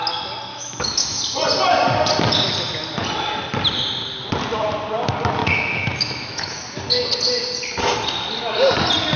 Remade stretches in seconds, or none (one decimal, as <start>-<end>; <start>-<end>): 0.5-1.2; 5.4-6.8